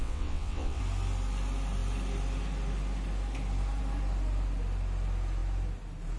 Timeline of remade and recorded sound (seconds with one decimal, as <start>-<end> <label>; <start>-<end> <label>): 0.0-0.8 remade; 0.8-6.2 recorded